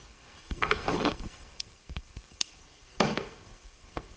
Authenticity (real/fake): fake